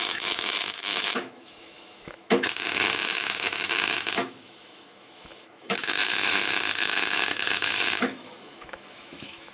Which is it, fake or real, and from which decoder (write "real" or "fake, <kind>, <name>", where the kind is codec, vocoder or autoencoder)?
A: fake, autoencoder, DAC-VAE